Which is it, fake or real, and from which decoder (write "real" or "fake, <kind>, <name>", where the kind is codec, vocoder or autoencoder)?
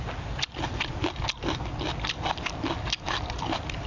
real